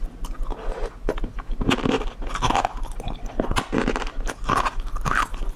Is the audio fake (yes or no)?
no